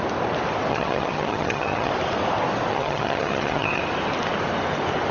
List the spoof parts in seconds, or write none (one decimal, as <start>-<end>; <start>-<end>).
0.7-1.9; 2.7-3.8